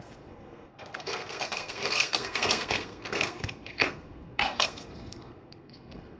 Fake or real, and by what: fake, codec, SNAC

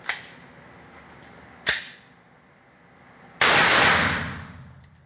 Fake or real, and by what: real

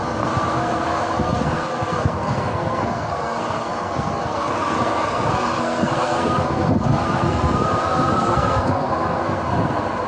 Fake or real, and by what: fake, codec, SNAC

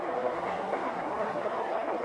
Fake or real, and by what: fake, codec, SNAC